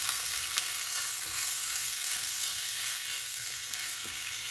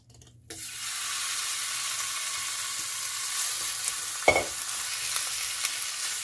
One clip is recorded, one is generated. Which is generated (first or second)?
first